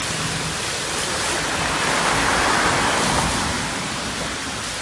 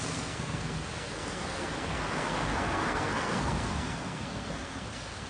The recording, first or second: first